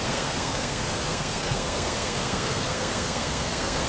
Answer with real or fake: fake